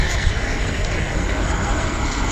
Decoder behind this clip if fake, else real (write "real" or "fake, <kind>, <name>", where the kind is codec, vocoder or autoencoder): fake, codec, SNAC